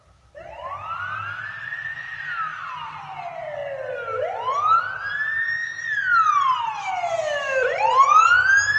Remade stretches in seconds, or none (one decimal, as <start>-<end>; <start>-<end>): none

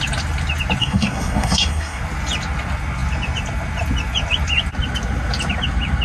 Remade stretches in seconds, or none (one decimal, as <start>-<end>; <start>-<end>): 0.8-2.0